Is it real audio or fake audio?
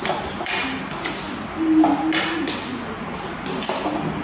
real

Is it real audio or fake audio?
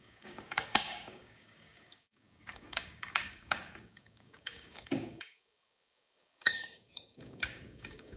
fake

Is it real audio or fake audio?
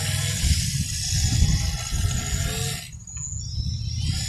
real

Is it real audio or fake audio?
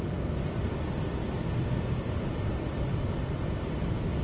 real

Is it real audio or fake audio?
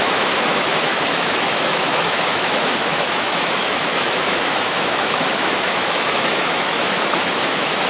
fake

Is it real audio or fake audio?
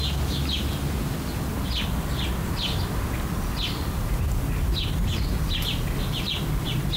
real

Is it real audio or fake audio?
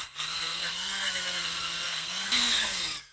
fake